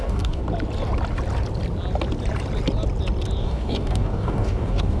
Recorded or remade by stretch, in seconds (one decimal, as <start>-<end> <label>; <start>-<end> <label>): 0.0-0.4 remade; 0.4-3.4 recorded; 3.4-5.0 remade